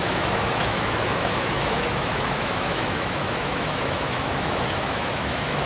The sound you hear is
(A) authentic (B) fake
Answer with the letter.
B